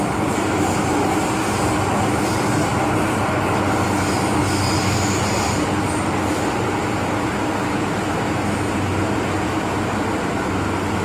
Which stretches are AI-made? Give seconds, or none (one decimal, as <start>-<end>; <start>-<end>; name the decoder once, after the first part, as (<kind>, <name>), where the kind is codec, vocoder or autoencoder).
none